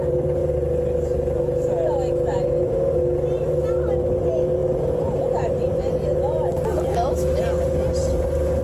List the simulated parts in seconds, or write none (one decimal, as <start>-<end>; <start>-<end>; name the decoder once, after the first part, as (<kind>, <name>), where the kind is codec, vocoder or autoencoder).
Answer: 6.9-7.4 (autoencoder, DAC-VAE)